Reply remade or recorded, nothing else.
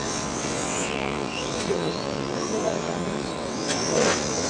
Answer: remade